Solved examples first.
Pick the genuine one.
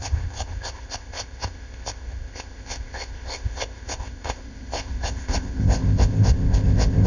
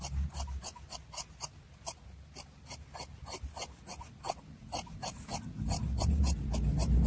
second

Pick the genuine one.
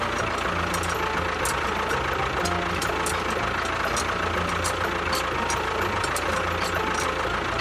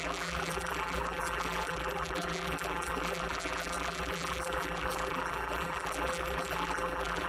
first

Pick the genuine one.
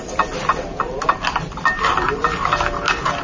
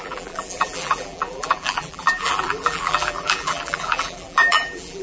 first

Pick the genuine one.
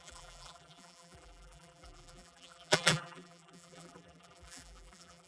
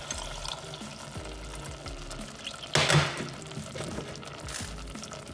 second